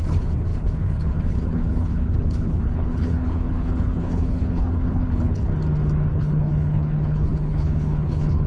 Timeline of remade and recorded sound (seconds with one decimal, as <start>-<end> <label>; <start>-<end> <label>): 0.0-5.5 remade; 5.5-6.1 recorded; 6.1-8.5 remade